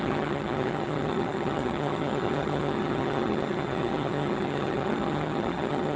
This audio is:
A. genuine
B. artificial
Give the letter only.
B